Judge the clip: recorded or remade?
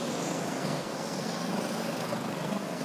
remade